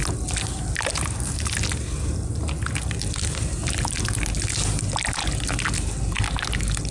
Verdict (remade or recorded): recorded